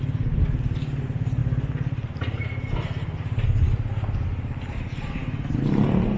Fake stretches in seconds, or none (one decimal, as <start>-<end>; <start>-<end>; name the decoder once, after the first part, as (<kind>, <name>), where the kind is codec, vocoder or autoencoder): none